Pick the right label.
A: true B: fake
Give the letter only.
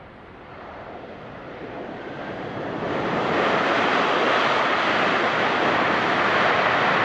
A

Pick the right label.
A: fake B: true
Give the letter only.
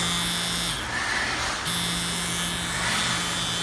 B